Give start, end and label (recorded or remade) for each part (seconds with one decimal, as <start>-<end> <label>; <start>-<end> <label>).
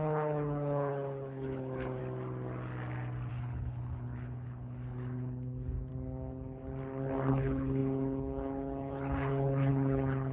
0.0-2.0 remade; 2.0-3.3 recorded; 3.3-5.9 remade; 5.9-7.3 recorded; 7.3-10.3 remade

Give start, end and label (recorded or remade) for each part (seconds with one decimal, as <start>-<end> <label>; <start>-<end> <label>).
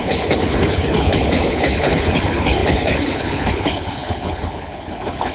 0.0-5.3 remade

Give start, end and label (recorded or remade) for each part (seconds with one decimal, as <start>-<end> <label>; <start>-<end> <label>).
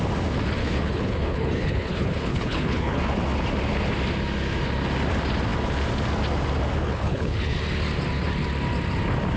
0.0-0.6 recorded; 0.6-3.0 remade; 3.0-6.8 recorded; 6.8-7.6 remade; 7.6-9.4 recorded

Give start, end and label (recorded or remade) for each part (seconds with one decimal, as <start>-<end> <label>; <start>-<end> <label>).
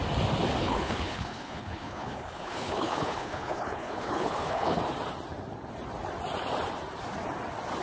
0.0-0.6 recorded; 0.6-4.8 remade; 4.8-7.8 recorded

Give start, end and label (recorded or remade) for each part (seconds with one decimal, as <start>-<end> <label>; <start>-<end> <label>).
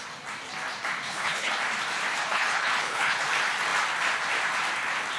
0.0-1.0 recorded; 1.0-1.5 remade; 1.5-2.1 recorded; 2.1-3.2 remade; 3.2-5.2 recorded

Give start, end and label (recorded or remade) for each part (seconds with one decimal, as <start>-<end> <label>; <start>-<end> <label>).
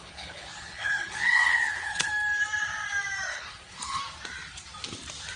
0.0-2.1 remade; 2.1-3.3 recorded; 3.3-4.0 remade; 4.0-5.4 recorded